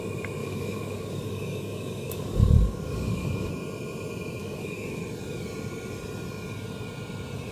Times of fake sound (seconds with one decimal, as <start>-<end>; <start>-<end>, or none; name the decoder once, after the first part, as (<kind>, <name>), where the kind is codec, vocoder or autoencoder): 0.4-3.5 (codec, DAC); 4.4-5.0

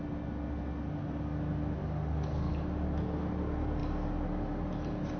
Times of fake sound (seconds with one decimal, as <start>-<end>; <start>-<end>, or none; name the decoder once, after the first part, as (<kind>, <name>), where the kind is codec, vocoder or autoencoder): 1.8-2.5 (codec, DAC)

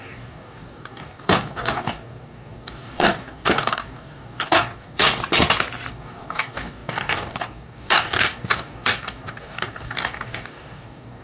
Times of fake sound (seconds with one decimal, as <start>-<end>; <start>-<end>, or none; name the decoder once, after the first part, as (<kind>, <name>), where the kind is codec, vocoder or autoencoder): 0.0-5.0 (codec, DAC); 5.9-11.2

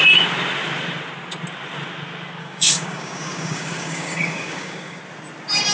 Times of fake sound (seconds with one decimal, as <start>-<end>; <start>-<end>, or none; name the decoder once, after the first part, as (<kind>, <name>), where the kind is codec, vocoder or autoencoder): 2.4-5.0 (codec, DAC)

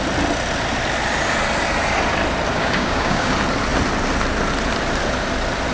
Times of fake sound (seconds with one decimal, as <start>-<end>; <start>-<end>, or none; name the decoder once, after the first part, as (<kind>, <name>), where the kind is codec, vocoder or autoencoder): 2.5-3.3 (codec, DAC)

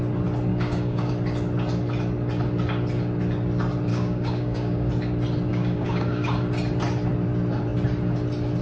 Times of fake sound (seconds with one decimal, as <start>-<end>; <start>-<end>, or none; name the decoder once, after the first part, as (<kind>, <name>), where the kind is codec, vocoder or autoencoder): 0.5-1.1 (codec, DAC); 3.9-4.9; 5.5-6.3

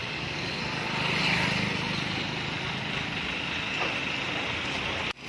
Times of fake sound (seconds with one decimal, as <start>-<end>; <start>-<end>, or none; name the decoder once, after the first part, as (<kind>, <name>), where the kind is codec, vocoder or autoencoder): 0.0-0.6 (codec, DAC)